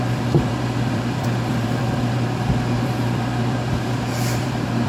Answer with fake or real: fake